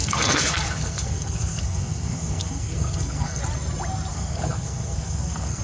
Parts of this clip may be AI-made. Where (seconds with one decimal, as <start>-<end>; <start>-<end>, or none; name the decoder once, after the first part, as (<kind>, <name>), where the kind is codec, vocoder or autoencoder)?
0.0-3.4 (codec, SNAC); 4.1-5.6